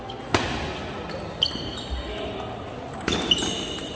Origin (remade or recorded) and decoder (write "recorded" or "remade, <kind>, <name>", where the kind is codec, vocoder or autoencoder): recorded